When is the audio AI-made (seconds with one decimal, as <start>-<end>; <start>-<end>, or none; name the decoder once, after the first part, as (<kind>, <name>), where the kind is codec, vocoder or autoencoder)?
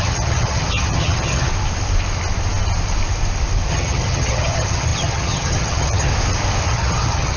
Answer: 0.0-1.5 (vocoder, HiFi-GAN); 3.7-6.1; 6.7-7.4